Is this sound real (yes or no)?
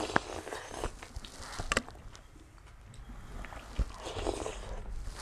yes